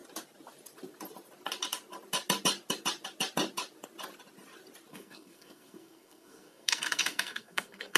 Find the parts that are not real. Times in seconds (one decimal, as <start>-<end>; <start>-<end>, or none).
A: 4.9-8.0